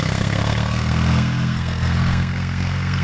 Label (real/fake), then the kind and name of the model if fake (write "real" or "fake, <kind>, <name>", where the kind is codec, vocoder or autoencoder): fake, codec, SNAC